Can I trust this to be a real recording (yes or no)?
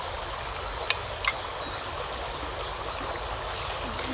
yes